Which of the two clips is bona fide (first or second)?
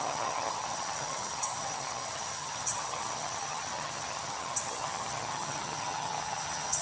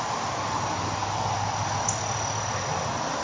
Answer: second